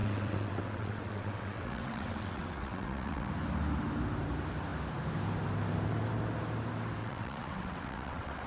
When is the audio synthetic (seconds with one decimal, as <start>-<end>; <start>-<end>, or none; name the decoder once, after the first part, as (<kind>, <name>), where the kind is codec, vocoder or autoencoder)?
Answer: 0.0-3.3 (vocoder, WaveNeXt); 7.0-8.5

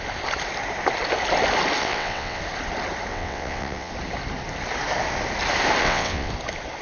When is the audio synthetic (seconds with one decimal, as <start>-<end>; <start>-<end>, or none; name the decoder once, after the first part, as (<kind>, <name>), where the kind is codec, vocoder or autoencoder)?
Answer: 1.8-2.4 (vocoder, WaveNeXt); 3.1-3.9; 5.8-6.3

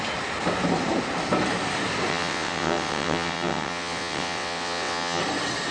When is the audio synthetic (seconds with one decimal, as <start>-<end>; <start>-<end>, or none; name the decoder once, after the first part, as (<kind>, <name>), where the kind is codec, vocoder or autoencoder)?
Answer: 2.1-5.2 (vocoder, WaveNeXt)

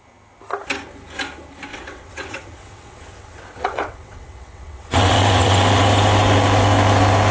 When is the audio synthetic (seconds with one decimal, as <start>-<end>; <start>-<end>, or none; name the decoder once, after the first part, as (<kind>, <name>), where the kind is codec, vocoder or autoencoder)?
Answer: 1.7-5.8 (vocoder, WaveNeXt)

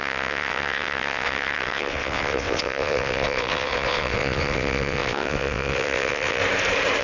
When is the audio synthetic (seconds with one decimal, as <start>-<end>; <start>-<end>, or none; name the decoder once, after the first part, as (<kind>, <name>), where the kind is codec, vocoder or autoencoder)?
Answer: 0.0-6.4 (vocoder, WaveNeXt)

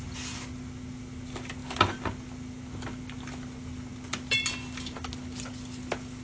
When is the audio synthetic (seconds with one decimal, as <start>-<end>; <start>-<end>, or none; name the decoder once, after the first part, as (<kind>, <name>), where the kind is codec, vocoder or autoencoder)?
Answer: none

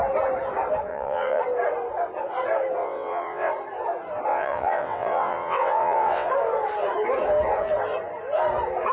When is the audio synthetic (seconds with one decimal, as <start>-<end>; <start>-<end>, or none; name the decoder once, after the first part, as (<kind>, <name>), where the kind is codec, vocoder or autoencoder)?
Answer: 0.9-1.4 (vocoder, WaveNeXt); 2.8-3.5; 4.3-6.3

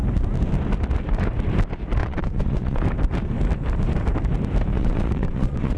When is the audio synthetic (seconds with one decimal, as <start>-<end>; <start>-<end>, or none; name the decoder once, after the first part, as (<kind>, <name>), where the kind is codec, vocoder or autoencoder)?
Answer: 2.0-2.8 (vocoder, WaveNeXt); 4.7-5.8